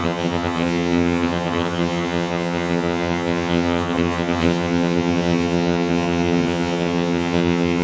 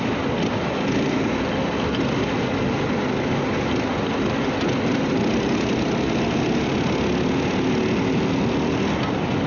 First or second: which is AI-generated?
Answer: first